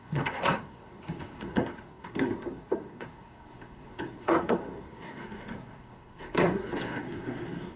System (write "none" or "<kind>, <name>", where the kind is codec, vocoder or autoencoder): codec, SNAC